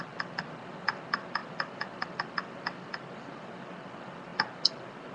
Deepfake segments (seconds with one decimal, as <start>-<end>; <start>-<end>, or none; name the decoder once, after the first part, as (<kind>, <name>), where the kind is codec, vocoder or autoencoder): none